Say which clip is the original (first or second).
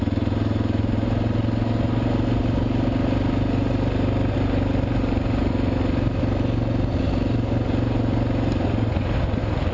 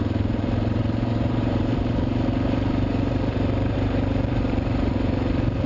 first